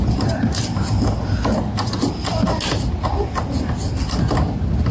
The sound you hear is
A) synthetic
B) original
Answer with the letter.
B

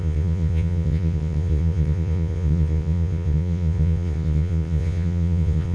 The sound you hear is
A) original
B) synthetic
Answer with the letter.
B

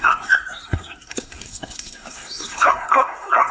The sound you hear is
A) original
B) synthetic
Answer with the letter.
B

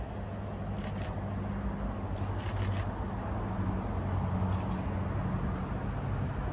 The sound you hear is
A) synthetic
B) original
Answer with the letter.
B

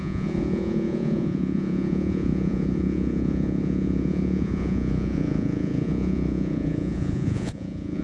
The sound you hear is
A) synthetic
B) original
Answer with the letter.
A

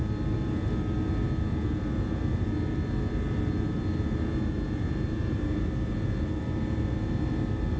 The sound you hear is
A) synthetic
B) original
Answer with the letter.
B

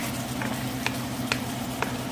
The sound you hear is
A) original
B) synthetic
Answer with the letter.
A